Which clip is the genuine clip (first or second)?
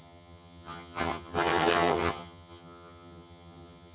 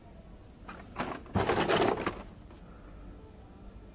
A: second